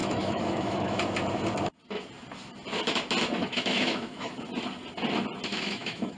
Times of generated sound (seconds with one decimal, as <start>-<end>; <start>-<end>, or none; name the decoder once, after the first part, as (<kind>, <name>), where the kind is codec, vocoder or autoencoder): 0.0-1.0 (autoencoder, DAC-VAE); 3.4-4.4; 5.5-6.2